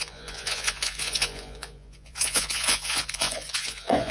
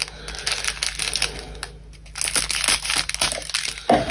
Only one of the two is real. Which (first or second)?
second